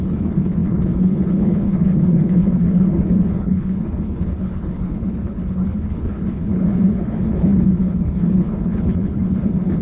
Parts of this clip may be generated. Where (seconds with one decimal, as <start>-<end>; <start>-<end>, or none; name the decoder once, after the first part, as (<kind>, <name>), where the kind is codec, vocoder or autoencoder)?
0.0-9.8 (codec, HILCodec)